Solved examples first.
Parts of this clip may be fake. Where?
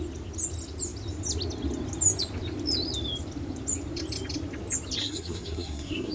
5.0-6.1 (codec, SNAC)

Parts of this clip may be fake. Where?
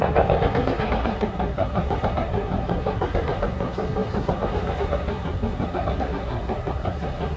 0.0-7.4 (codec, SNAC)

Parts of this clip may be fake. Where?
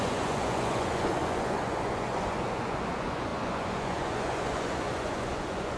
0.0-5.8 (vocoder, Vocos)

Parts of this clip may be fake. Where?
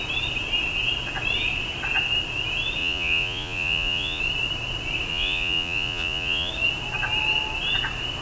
2.8-4.2 (vocoder, Vocos); 5.1-6.5